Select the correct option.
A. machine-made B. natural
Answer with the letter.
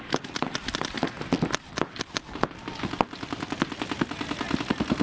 B